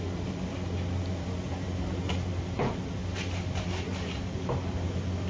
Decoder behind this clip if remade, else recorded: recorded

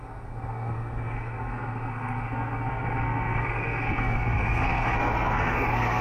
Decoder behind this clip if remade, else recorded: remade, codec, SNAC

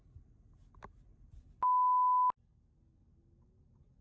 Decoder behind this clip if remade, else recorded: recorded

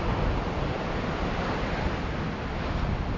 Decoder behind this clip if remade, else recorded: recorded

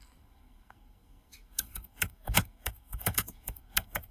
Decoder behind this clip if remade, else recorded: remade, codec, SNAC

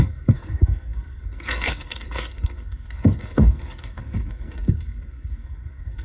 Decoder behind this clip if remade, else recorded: remade, codec, SNAC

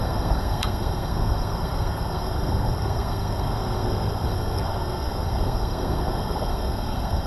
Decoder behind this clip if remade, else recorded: remade, codec, SNAC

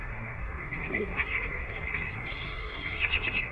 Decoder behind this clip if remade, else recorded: remade, codec, SNAC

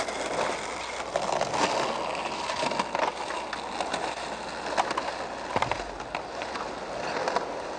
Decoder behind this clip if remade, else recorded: recorded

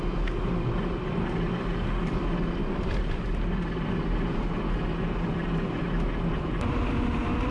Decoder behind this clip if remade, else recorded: recorded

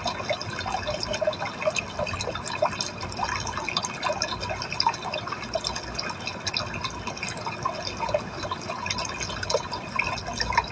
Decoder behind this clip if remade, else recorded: recorded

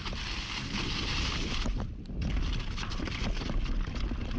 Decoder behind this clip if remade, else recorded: recorded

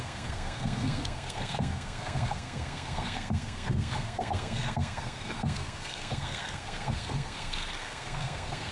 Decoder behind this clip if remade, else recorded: remade, codec, SNAC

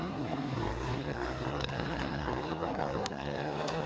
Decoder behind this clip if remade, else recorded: remade, codec, SNAC